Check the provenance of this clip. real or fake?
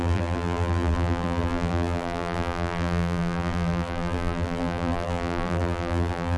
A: fake